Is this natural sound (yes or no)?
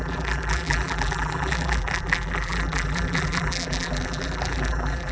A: no